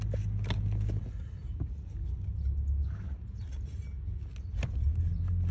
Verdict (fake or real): real